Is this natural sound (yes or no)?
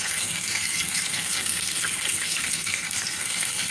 no